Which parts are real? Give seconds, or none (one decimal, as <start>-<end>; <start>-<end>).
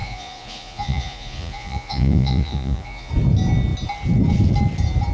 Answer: 3.1-5.1